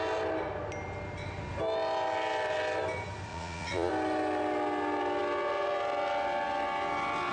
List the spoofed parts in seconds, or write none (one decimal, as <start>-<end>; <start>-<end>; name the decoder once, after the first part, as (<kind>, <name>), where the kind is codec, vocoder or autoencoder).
3.3-3.9 (vocoder, Vocos)